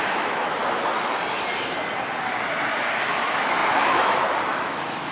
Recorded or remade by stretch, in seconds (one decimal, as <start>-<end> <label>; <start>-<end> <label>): 0.0-0.6 remade; 0.6-3.1 recorded; 3.1-5.1 remade